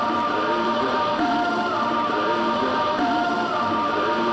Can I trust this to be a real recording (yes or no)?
no